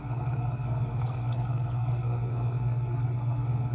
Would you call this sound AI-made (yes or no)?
yes